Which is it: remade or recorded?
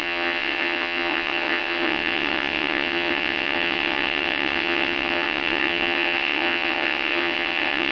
remade